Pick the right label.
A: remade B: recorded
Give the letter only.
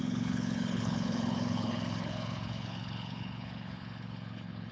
A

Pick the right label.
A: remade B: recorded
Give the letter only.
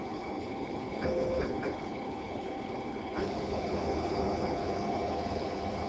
A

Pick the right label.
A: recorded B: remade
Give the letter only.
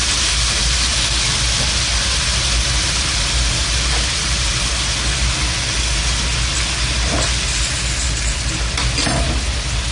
A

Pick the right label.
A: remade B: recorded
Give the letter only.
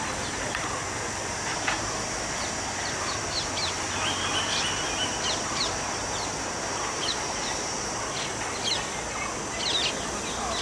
B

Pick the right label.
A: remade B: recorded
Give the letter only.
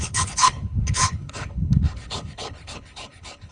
A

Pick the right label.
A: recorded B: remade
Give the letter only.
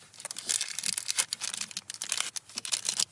A